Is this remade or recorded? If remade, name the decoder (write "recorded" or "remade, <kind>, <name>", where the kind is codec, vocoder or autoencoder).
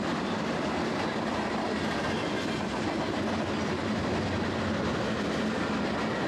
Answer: recorded